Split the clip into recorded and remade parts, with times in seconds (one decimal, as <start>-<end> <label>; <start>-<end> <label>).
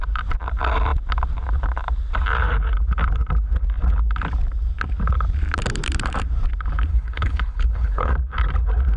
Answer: 0.0-6.9 recorded; 6.9-8.1 remade; 8.1-9.0 recorded